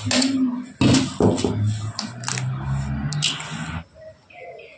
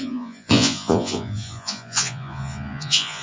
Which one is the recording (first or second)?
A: first